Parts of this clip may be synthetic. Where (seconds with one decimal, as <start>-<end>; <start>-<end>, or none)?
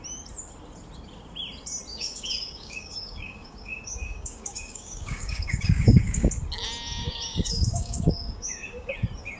1.9-6.3; 7.0-8.9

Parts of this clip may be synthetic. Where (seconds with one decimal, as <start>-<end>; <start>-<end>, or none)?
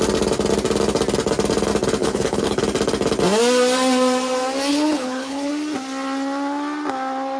2.0-2.6; 4.7-5.5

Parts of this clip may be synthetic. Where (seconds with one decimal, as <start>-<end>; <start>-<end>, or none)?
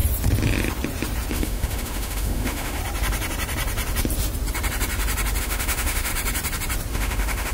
1.3-2.8; 5.4-6.1; 6.9-7.5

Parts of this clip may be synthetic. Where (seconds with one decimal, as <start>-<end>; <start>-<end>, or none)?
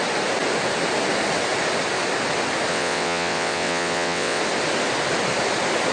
2.7-4.4